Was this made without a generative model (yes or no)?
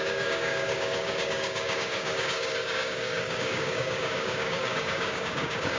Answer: no